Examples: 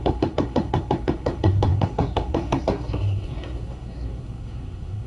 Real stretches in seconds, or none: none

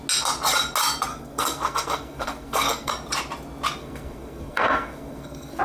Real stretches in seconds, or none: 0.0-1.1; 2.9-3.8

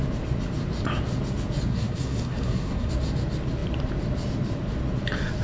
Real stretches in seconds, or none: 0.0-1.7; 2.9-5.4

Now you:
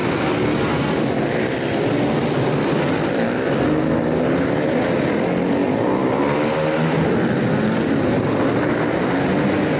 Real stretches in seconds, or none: 0.0-9.8